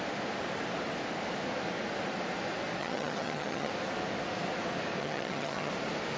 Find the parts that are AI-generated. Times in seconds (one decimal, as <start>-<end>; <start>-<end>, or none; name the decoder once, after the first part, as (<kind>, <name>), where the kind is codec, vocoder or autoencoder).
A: 2.8-3.7 (vocoder, HiFi-GAN); 5.0-5.7

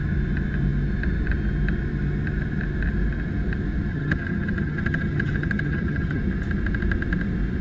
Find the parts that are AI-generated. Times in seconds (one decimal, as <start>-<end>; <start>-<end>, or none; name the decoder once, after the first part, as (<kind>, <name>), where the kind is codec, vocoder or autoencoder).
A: 3.9-6.2 (vocoder, HiFi-GAN)

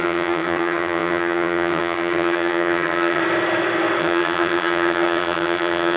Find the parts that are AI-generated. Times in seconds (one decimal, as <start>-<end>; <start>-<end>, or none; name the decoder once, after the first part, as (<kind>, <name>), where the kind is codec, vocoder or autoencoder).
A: 0.0-3.2 (vocoder, HiFi-GAN); 4.0-6.0

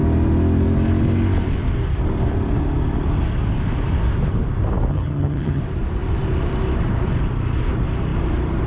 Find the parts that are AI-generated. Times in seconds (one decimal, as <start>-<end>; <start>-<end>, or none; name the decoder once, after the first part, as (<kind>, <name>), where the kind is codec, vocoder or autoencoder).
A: 4.9-5.6 (vocoder, HiFi-GAN)

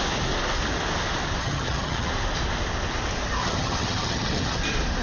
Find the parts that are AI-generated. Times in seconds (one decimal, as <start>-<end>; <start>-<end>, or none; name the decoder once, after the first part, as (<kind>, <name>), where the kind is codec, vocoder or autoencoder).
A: 1.4-2.1 (vocoder, HiFi-GAN); 3.4-4.6

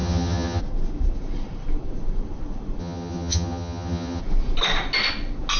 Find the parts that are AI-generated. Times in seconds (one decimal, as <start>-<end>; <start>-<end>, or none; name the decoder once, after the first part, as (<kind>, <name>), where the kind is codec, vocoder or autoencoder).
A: 0.0-0.6 (vocoder, HiFi-GAN); 2.8-4.2